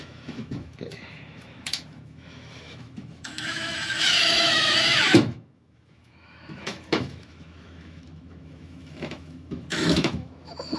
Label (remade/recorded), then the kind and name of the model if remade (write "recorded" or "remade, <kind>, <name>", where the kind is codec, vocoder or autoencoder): remade, autoencoder, DAC-VAE